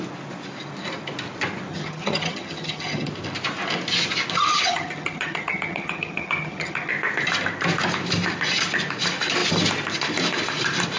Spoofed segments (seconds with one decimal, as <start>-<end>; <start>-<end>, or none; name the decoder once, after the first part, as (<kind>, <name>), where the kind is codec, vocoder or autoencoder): 1.7-3.1 (vocoder, HiFi-GAN); 4.5-6.9